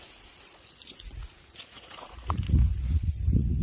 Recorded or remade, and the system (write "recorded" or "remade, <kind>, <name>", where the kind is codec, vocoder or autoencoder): remade, vocoder, Vocos